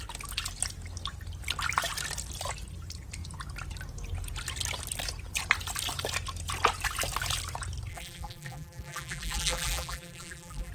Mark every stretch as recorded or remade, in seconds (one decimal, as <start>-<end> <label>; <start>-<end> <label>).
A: 0.0-7.9 recorded; 7.9-10.7 remade